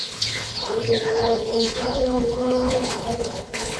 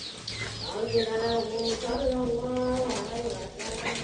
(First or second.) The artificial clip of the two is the first